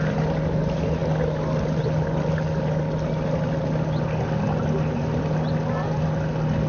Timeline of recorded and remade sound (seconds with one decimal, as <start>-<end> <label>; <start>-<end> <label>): 0.0-6.7 recorded